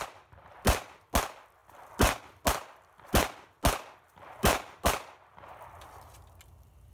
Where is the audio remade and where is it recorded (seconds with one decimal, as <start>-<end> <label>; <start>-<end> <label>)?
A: 0.0-6.9 recorded